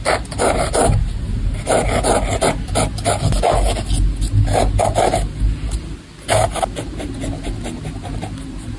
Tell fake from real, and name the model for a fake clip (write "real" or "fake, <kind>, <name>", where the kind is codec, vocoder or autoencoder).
real